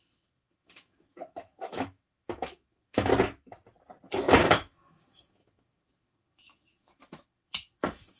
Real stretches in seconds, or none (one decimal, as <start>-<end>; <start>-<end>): 3.1-4.4